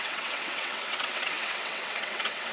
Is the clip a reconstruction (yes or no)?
yes